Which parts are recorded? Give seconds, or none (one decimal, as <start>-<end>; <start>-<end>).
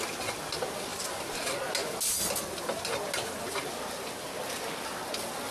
0.0-5.5